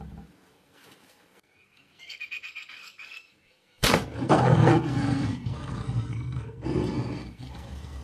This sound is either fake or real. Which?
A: fake